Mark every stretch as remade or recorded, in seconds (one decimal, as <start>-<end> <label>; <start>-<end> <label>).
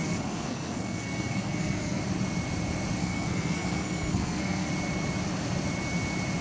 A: 0.0-2.0 remade; 2.0-3.0 recorded; 3.0-4.7 remade; 4.7-6.4 recorded